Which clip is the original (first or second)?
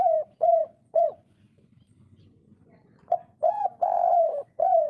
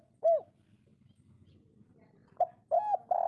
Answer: second